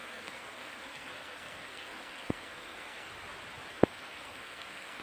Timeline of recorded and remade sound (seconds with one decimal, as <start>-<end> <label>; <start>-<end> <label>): 0.0-3.1 remade; 3.1-3.7 recorded; 3.7-5.0 remade